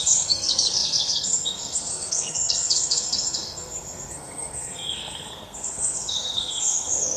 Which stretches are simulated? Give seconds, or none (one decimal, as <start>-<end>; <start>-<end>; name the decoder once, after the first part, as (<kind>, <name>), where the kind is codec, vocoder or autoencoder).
0.0-7.2 (codec, SNAC)